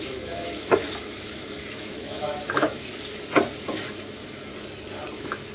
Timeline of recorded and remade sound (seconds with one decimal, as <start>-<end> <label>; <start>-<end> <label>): 0.0-2.8 remade; 2.8-3.6 recorded; 3.6-4.5 remade; 4.5-5.1 recorded; 5.1-5.5 remade